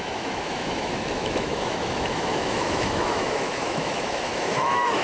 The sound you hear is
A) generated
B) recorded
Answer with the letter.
A